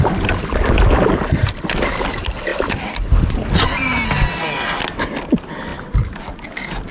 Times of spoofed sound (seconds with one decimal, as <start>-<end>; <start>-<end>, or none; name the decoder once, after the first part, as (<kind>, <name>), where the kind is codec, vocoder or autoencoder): none